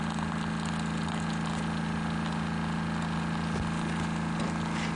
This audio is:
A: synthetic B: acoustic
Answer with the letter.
B